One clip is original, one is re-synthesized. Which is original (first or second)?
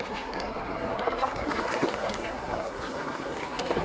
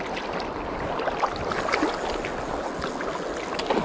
second